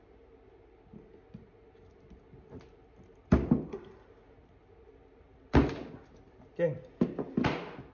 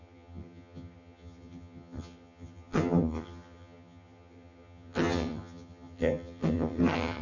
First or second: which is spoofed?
second